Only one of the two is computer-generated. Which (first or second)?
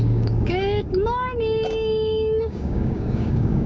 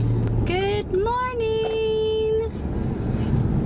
first